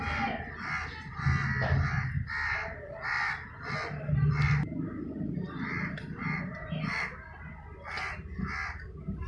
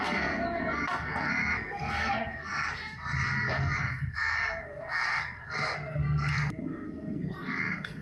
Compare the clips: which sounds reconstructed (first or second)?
second